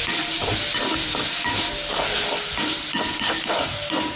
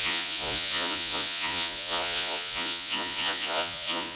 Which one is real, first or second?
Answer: first